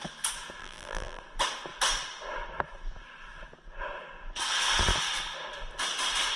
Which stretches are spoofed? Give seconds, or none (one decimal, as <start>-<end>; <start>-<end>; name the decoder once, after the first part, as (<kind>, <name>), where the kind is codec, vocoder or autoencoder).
0.6-1.2 (vocoder, BigVGAN v2)